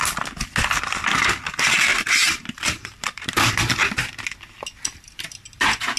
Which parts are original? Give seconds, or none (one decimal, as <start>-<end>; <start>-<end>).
0.0-1.9; 3.5-6.0